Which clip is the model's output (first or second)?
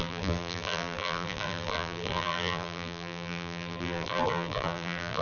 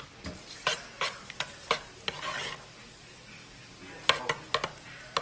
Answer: first